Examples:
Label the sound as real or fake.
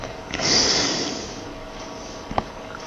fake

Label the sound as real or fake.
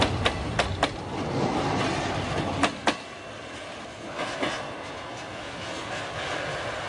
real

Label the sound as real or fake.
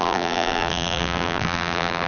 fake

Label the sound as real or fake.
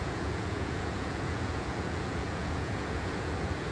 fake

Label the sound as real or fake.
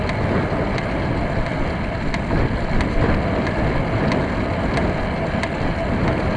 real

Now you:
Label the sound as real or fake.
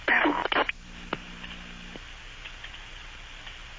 real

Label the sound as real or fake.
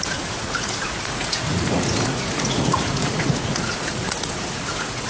fake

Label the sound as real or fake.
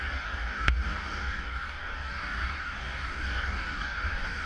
fake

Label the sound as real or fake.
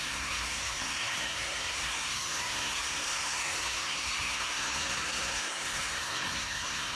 fake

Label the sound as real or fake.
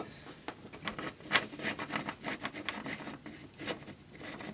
real